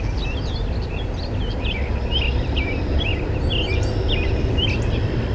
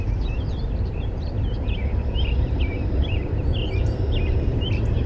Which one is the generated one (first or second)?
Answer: second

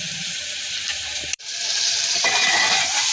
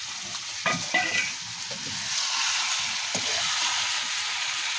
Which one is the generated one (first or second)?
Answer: first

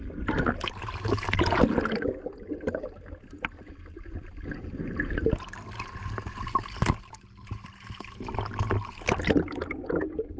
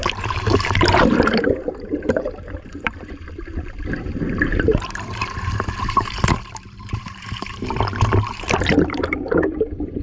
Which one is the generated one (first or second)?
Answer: second